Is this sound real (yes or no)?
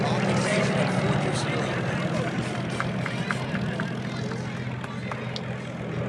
yes